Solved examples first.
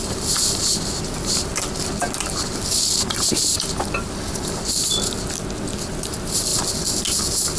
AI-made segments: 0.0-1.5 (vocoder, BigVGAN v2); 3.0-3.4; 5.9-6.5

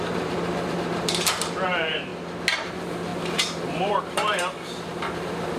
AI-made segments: 0.0-2.1 (vocoder, BigVGAN v2); 2.6-5.6

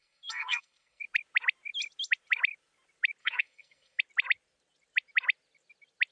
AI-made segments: 0.0-1.0 (codec, SNAC); 3.2-4.0

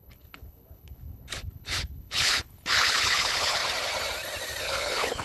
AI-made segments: 0.0-3.6 (codec, HILCodec); 4.6-5.2

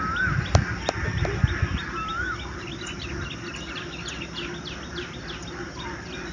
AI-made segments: 0.0-6.3 (vocoder, BigVGAN v2)

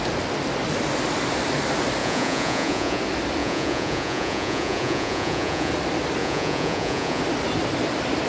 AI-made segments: 2.0-3.0 (vocoder, Vocos); 3.4-5.7; 6.2-7.2

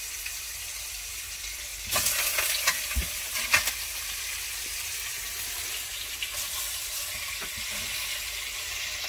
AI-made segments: none